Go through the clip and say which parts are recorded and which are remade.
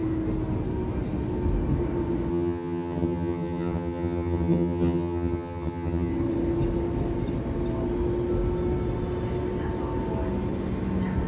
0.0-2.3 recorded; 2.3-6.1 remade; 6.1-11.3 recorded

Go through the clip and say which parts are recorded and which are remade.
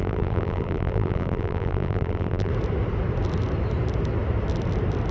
0.0-2.5 remade; 2.5-5.1 recorded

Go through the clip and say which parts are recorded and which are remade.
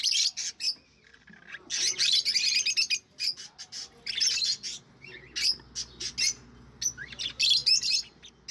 0.0-8.5 recorded